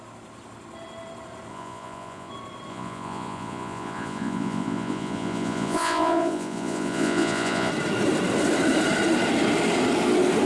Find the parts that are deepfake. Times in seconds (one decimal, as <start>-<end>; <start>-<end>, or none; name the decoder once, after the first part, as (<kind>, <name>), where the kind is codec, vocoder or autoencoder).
1.5-2.3 (vocoder, Vocos); 2.7-7.7